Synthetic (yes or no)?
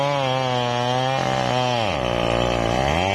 no